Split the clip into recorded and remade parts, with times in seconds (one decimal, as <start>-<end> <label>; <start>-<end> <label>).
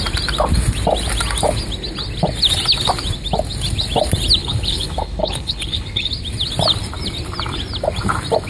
0.0-4.4 recorded; 4.4-6.1 remade; 6.1-8.5 recorded